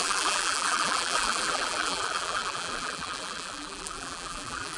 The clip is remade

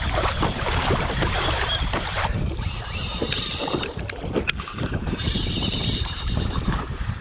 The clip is remade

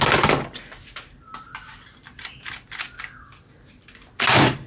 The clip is recorded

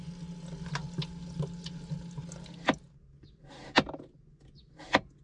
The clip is recorded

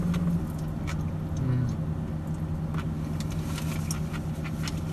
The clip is recorded